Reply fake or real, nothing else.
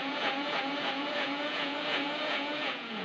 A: fake